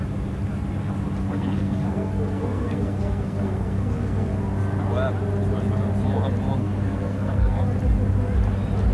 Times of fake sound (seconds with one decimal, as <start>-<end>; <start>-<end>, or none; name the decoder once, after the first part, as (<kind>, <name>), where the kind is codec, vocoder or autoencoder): 1.2-4.4 (codec, SNAC); 6.6-7.6